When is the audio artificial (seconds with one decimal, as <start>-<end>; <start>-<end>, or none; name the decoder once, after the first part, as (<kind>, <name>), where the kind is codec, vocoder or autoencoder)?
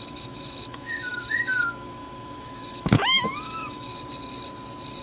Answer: 0.0-3.9 (autoencoder, DAC-VAE)